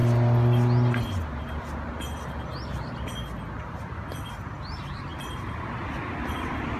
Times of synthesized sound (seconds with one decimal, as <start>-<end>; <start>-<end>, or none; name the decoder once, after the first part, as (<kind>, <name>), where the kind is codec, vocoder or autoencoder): none